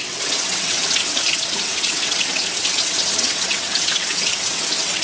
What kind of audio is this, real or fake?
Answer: fake